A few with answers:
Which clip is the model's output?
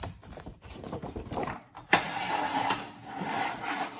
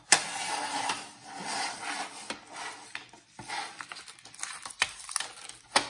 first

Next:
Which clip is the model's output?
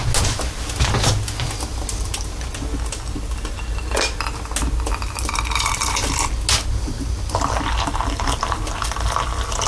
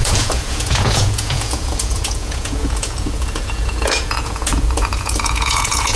second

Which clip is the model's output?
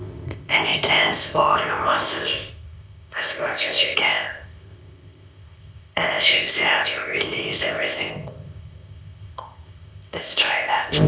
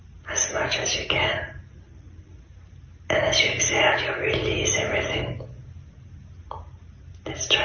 first